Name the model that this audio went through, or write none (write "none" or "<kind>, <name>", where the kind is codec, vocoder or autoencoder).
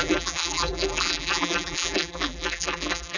vocoder, BigVGAN v2